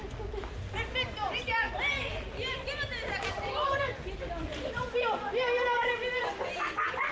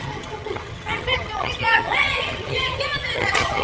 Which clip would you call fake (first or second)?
second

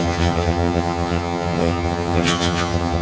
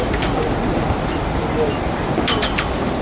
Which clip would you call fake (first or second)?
first